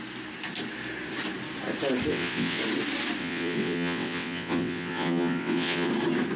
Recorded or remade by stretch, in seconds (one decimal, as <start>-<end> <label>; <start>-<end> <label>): 0.0-2.1 recorded; 2.1-2.6 remade; 2.6-3.2 recorded; 3.2-5.9 remade; 5.9-6.4 recorded